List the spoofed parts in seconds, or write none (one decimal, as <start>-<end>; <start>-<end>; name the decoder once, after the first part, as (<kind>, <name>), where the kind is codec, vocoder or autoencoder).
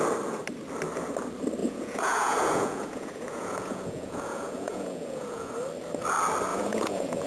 1.6-5.5 (vocoder, Vocos); 6.5-7.3